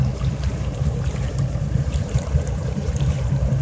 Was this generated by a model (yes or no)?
yes